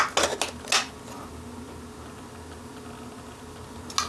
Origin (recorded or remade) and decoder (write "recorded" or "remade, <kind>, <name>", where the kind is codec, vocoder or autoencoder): recorded